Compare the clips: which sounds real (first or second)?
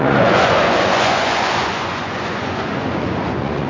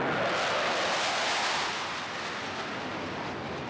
second